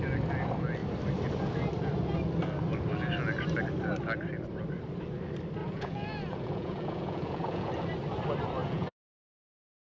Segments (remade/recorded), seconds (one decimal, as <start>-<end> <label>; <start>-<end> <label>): 0.0-5.6 recorded; 5.6-7.7 remade; 7.7-8.6 recorded; 8.6-9.5 remade; 9.5-10.0 recorded